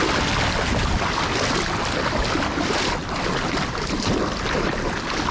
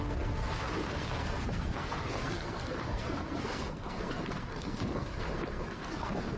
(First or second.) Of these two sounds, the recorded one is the first